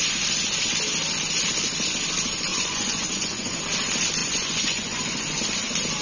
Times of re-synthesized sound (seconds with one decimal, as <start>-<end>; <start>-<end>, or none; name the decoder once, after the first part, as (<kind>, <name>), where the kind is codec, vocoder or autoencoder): 2.5-3.6 (vocoder, Vocos); 4.2-5.4